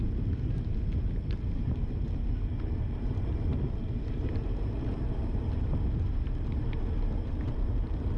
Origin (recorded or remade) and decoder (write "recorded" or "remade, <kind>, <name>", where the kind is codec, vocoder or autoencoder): remade, vocoder, BigVGAN v2